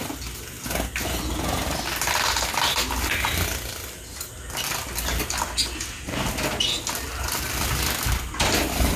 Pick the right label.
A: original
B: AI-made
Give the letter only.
A